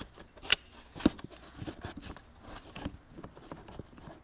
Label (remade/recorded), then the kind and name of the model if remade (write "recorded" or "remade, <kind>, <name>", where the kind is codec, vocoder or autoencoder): recorded